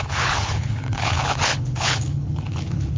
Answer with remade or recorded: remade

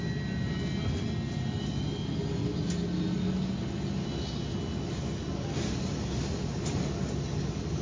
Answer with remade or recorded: recorded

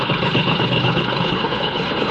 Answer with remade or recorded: remade